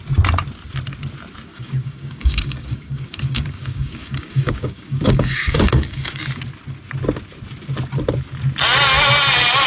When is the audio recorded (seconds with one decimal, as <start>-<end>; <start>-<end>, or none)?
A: 0.0-1.5; 6.4-9.7